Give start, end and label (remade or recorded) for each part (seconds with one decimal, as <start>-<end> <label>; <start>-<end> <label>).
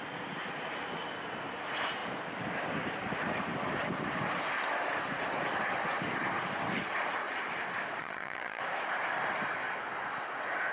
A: 0.0-8.0 recorded; 8.0-8.6 remade; 8.6-10.7 recorded